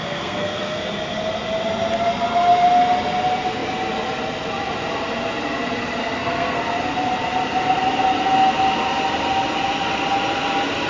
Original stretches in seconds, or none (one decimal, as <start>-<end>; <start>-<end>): 0.9-6.0; 6.6-10.9